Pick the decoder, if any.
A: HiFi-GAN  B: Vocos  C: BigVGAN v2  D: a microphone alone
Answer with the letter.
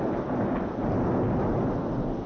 D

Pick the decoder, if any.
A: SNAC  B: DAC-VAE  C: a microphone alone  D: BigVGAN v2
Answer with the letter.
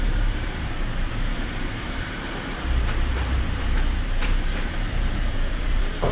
D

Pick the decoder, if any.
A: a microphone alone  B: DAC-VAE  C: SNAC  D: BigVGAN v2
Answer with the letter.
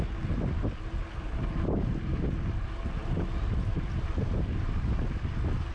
A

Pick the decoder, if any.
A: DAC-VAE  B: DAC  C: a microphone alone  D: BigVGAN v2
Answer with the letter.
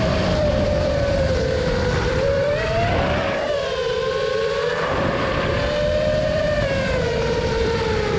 D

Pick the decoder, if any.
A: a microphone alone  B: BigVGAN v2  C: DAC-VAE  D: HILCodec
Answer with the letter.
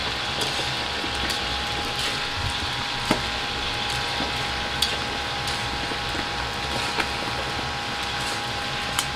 B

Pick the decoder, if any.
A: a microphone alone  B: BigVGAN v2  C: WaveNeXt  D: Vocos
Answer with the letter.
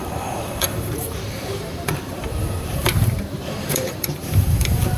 B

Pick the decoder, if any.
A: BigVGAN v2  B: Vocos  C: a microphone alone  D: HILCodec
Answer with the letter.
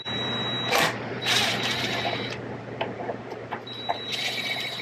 A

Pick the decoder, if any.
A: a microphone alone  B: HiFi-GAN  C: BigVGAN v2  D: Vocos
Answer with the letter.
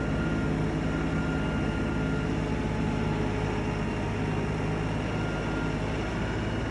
A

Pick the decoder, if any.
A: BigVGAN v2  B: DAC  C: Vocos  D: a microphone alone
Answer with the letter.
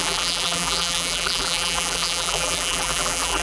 A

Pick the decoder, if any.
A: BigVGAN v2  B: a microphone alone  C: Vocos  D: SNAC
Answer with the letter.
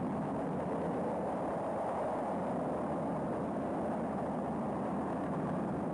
B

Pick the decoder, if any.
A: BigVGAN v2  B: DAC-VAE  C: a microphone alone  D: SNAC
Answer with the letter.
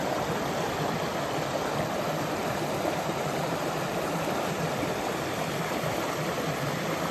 A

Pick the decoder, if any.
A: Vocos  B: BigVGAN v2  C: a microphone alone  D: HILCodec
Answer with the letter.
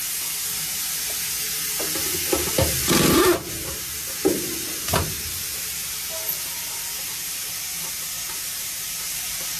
C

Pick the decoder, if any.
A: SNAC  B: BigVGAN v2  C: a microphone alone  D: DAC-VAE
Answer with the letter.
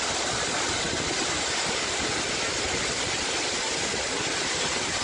C